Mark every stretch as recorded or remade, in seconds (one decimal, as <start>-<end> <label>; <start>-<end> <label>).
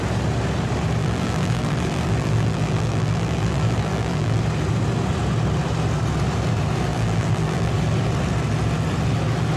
0.0-1.0 recorded; 1.0-4.4 remade; 4.4-6.9 recorded; 6.9-7.7 remade; 7.7-9.6 recorded